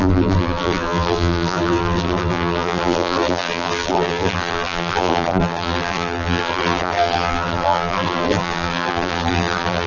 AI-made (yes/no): yes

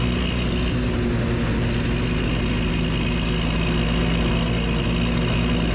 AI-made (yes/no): no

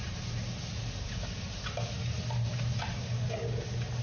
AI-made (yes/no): no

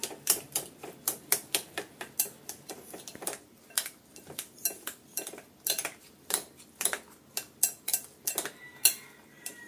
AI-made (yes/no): no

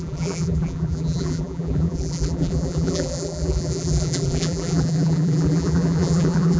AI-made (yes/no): yes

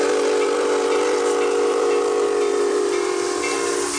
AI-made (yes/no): yes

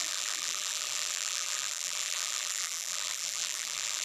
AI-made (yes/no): yes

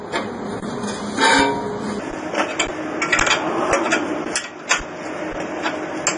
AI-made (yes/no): no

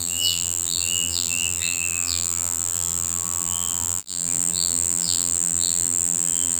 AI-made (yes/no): yes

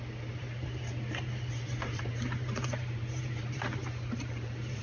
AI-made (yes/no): yes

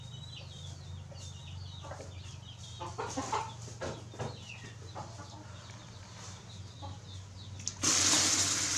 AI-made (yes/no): no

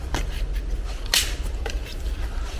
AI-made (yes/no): no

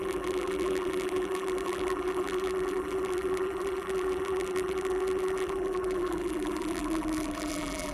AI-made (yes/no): yes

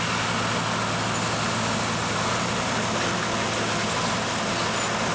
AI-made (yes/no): no